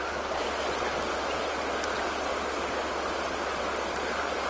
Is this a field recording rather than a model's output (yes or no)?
yes